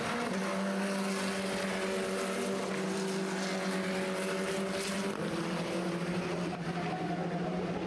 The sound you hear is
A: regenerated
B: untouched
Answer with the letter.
B